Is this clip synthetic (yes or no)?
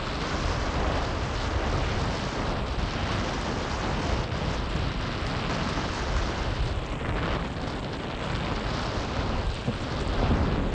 no